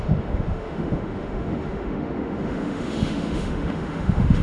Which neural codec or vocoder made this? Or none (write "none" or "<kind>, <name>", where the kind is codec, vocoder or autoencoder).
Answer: autoencoder, DAC-VAE